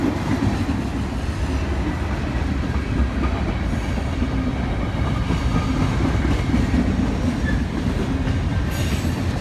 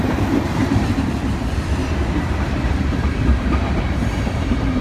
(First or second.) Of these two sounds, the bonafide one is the first